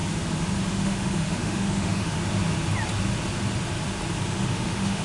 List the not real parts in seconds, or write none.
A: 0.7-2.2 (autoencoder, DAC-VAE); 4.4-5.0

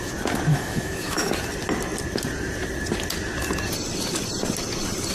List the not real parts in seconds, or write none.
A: 0.5-1.4 (autoencoder, DAC-VAE)

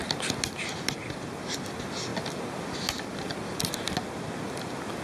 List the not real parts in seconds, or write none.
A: none

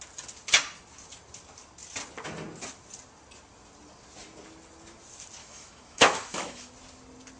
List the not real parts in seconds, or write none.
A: 5.4-6.7 (autoencoder, DAC-VAE)